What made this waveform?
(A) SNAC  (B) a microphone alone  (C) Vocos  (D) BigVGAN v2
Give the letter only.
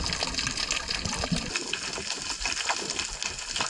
B